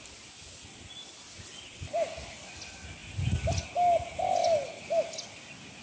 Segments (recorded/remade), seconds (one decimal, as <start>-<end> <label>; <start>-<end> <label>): 0.0-5.8 recorded